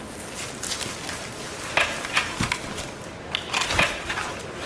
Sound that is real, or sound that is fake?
real